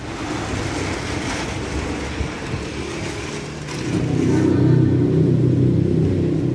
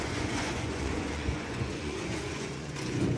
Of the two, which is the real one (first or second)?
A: first